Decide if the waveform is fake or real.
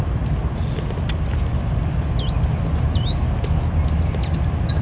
real